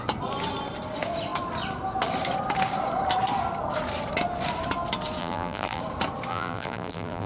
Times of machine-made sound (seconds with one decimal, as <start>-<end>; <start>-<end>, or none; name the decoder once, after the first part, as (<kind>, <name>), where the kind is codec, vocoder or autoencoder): 5.2-5.8 (vocoder, BigVGAN v2); 6.3-7.3